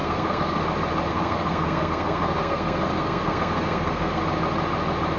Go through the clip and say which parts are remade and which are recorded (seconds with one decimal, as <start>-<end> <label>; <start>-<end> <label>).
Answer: 0.0-0.6 remade; 0.6-1.1 recorded; 1.1-4.2 remade; 4.2-5.2 recorded